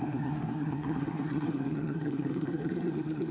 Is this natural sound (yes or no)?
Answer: no